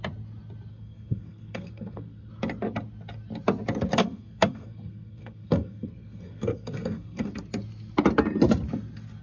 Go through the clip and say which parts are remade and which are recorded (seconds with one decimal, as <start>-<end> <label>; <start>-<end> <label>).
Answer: 0.0-0.7 recorded; 0.7-2.3 remade; 2.3-4.0 recorded; 4.0-7.3 remade; 7.3-9.2 recorded

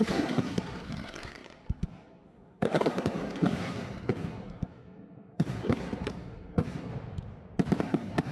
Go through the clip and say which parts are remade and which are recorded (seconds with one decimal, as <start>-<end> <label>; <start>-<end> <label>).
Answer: 0.0-6.9 remade; 6.9-7.8 recorded; 7.8-8.3 remade